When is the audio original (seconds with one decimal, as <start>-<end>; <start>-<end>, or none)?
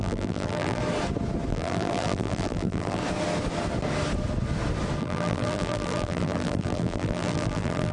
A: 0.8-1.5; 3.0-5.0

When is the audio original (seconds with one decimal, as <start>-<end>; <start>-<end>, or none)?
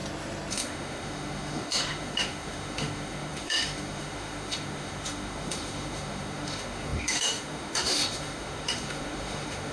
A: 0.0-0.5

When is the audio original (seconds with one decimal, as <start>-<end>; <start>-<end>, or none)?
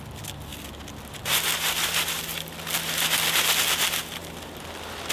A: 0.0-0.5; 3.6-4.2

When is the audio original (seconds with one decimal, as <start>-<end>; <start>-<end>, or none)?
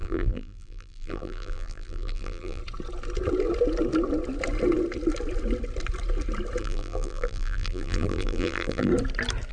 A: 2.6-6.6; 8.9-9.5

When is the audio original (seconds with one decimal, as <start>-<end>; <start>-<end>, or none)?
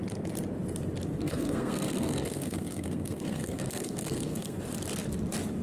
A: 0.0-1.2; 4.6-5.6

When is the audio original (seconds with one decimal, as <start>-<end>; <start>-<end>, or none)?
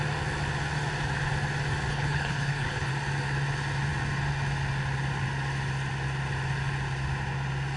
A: 0.0-1.9; 2.9-7.8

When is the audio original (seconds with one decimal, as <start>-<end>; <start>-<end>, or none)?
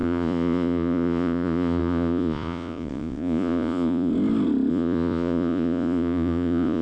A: 4.1-4.7